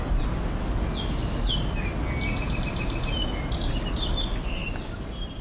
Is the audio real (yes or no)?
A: yes